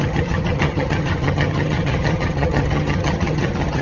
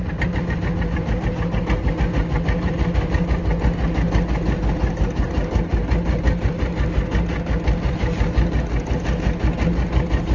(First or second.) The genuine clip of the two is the second